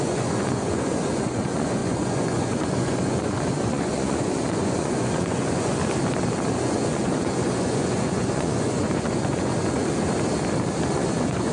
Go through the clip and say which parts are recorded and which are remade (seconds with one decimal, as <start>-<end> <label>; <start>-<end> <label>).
0.0-5.8 remade; 5.8-6.5 recorded; 6.5-9.9 remade; 9.9-10.9 recorded; 10.9-11.5 remade